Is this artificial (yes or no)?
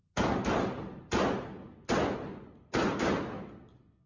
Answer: no